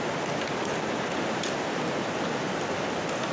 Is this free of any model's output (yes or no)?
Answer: yes